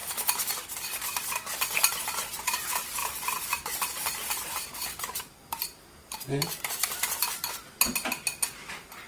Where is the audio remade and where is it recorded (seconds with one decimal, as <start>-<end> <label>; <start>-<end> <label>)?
0.0-3.0 recorded; 3.0-7.7 remade; 7.7-9.1 recorded